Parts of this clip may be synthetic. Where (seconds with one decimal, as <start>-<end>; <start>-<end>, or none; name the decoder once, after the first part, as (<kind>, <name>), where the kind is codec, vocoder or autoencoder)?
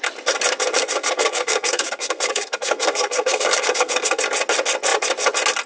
0.8-4.2 (codec, SNAC)